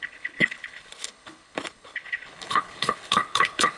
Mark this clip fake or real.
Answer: fake